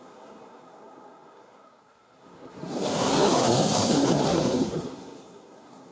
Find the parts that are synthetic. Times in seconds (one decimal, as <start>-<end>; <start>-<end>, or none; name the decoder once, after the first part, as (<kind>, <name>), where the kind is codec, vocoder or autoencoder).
0.0-5.9 (codec, SNAC)